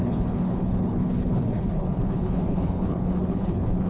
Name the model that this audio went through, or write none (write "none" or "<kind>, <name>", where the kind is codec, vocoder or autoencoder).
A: codec, HILCodec